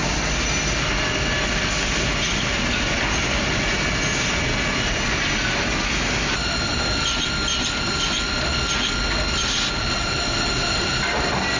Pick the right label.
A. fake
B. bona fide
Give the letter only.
B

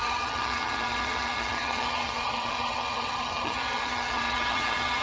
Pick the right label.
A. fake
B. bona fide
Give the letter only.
A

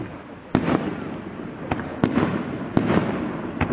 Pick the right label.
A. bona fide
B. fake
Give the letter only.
A